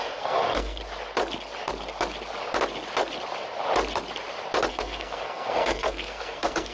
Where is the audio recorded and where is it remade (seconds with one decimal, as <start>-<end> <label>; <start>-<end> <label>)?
0.0-0.8 remade; 0.8-4.7 recorded; 4.7-6.7 remade